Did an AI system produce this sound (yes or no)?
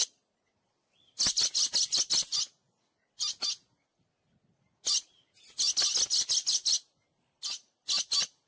no